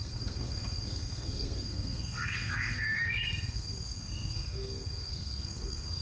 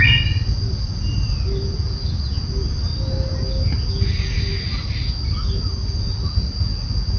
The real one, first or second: second